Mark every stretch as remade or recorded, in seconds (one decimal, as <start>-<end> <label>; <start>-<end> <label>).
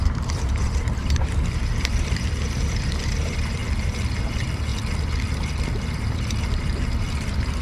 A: 0.0-3.6 remade; 3.6-4.2 recorded; 4.2-4.7 remade; 4.7-5.8 recorded; 5.8-7.6 remade